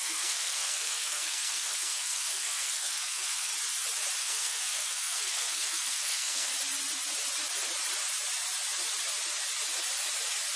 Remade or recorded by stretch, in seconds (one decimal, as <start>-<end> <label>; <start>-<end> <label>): 0.0-3.5 remade; 3.5-4.2 recorded; 4.2-6.5 remade; 6.5-10.6 recorded

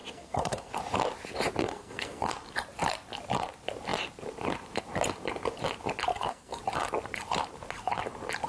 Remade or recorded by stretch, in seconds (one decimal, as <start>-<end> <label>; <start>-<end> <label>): 0.0-0.7 remade; 0.7-1.6 recorded; 1.6-2.3 remade; 2.3-6.1 recorded; 6.1-6.6 remade; 6.6-8.5 recorded

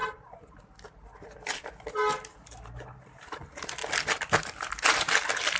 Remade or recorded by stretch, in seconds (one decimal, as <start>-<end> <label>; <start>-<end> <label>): 0.0-5.6 recorded

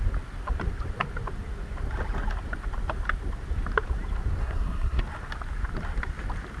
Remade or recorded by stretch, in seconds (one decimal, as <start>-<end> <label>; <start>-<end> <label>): 0.0-4.4 recorded; 4.4-5.0 remade; 5.0-6.6 recorded

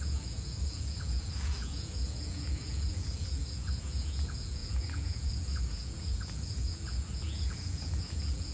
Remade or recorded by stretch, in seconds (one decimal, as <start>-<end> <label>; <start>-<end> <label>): 0.0-8.5 remade